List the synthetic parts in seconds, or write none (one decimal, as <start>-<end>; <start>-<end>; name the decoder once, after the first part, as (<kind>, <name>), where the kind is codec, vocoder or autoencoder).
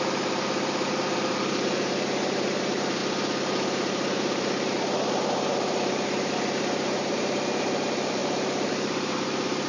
0.0-3.0 (vocoder, BigVGAN v2); 3.9-9.7